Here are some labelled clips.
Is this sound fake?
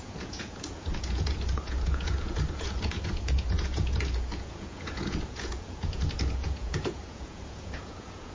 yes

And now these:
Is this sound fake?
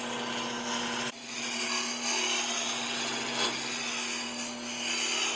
no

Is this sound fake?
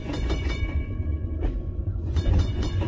yes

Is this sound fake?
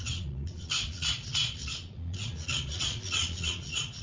yes